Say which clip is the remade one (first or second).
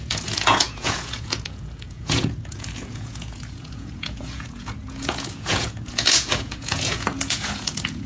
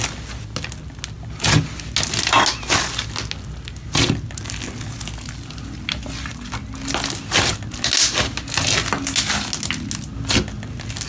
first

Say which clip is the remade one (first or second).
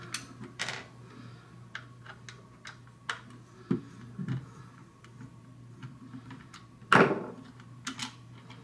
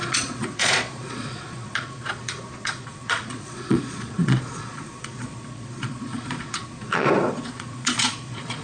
second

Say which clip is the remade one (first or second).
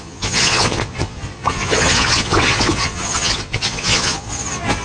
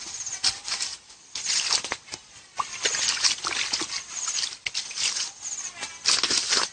first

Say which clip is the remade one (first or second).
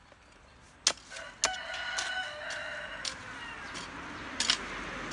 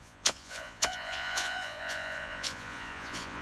second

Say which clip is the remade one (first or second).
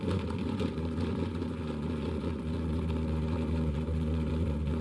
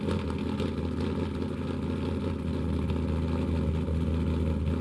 first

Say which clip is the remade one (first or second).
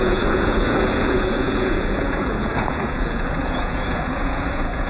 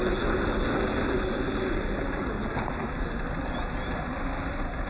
first